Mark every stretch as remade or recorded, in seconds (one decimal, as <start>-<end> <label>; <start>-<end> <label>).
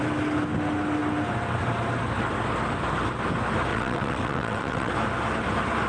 0.0-3.7 recorded; 3.7-4.9 remade; 4.9-5.9 recorded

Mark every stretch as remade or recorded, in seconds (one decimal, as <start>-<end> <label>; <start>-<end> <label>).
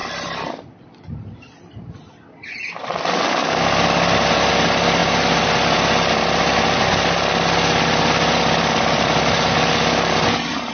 0.0-1.6 remade; 1.6-5.0 recorded; 5.0-6.1 remade; 6.1-10.7 recorded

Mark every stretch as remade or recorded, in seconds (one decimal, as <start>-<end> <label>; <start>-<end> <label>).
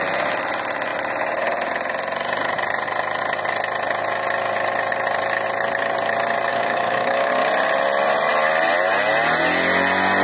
0.0-6.5 recorded; 6.5-7.3 remade; 7.3-10.2 recorded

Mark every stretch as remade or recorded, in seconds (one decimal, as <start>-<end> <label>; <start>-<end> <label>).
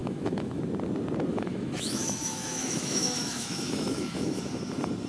0.0-0.6 remade; 0.6-1.3 recorded; 1.3-4.4 remade; 4.4-5.1 recorded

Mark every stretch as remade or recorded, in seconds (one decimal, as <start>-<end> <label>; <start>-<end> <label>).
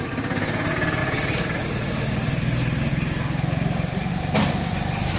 0.0-1.0 recorded; 1.0-2.9 remade; 2.9-4.1 recorded; 4.1-4.7 remade; 4.7-5.2 recorded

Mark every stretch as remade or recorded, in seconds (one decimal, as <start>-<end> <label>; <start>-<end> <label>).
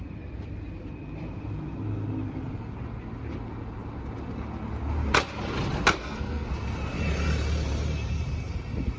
0.0-6.0 recorded; 6.0-6.5 remade; 6.5-9.0 recorded